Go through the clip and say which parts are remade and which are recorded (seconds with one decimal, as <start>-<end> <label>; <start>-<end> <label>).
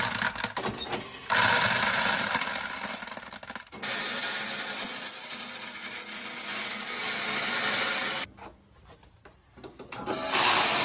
0.0-10.8 recorded